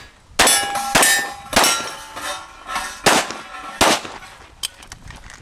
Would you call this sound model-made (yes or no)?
no